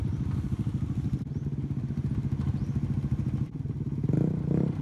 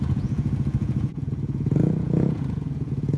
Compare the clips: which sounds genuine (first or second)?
first